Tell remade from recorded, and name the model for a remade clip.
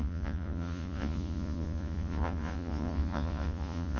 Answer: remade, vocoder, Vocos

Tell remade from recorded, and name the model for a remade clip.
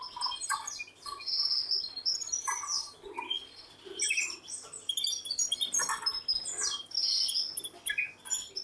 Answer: recorded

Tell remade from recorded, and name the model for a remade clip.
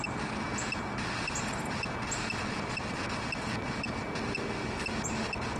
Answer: recorded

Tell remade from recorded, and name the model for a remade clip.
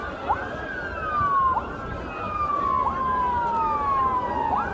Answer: recorded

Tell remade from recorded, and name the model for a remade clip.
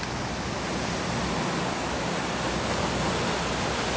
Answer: recorded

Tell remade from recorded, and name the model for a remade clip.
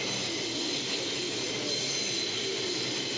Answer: recorded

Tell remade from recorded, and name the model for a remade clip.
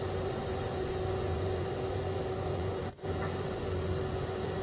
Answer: remade, vocoder, Vocos